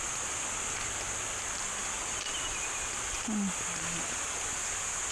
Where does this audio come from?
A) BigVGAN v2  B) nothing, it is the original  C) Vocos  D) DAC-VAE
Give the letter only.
B